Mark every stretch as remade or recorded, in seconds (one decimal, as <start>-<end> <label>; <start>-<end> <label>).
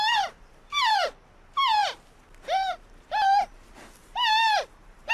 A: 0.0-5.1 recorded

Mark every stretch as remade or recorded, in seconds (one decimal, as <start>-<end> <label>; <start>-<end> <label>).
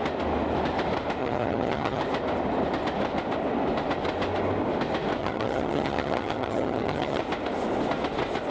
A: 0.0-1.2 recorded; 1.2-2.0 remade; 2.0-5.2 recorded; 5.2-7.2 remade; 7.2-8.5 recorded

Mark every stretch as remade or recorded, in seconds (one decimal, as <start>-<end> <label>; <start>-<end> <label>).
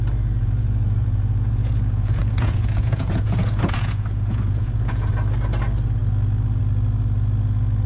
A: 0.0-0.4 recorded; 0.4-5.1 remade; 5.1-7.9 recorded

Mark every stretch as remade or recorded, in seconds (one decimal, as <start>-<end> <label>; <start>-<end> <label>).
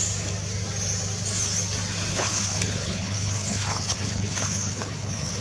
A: 0.0-2.1 recorded; 2.1-5.4 remade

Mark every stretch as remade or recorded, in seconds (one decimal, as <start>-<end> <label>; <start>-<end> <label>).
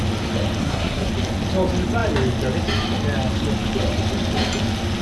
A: 0.0-0.6 recorded; 0.6-1.1 remade; 1.1-5.0 recorded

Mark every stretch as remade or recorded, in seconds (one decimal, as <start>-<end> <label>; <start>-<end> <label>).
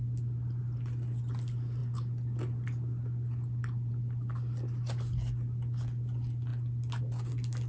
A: 0.0-7.7 recorded